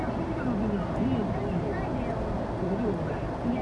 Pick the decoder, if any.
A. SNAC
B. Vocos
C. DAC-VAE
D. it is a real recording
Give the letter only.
D